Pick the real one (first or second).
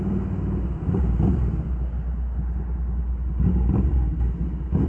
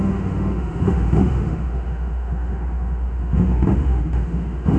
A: first